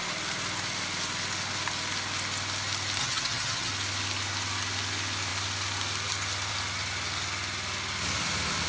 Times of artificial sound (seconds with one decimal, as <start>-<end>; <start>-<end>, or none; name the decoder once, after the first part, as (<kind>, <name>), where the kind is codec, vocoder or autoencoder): 3.0-3.7 (vocoder, HiFi-GAN)